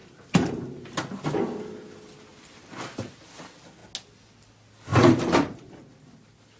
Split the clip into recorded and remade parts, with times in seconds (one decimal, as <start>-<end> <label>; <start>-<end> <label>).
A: 0.0-0.9 remade; 0.9-4.9 recorded; 4.9-5.7 remade; 5.7-6.6 recorded